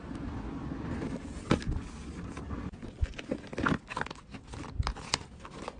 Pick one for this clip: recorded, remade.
recorded